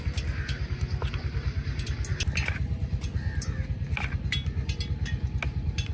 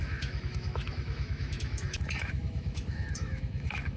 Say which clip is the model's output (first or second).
second